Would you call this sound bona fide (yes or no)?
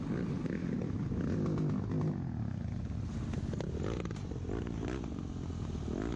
yes